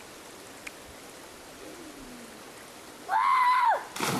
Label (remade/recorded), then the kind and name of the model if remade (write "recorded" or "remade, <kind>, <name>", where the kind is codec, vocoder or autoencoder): recorded